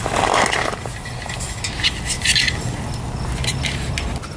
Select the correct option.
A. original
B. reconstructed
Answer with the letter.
A